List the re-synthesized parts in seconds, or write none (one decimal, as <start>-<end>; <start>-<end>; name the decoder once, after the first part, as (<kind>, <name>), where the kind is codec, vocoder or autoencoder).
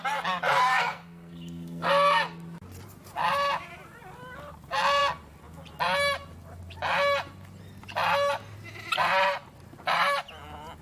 0.7-1.9 (codec, SNAC)